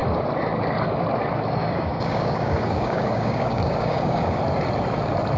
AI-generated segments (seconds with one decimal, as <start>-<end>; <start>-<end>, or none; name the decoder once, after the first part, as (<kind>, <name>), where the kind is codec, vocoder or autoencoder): 1.6-4.4 (codec, DAC)